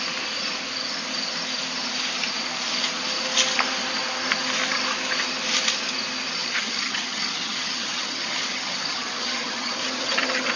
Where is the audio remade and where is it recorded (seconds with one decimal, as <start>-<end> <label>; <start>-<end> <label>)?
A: 0.0-6.4 recorded; 6.4-10.6 remade